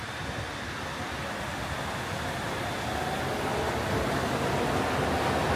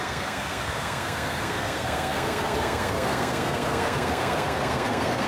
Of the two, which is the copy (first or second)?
second